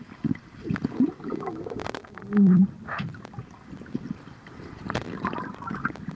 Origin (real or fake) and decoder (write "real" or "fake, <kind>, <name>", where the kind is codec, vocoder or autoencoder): real